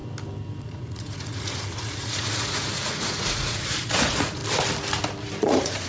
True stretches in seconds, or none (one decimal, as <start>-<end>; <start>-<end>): 0.0-0.6; 4.4-5.4